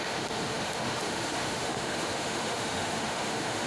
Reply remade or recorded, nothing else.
remade